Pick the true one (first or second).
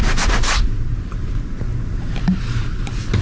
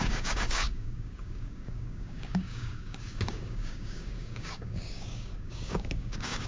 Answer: first